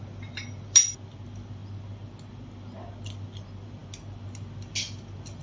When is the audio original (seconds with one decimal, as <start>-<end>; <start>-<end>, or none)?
0.0-5.4